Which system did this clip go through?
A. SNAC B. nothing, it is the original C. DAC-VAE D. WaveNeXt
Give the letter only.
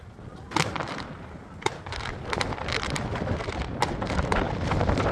B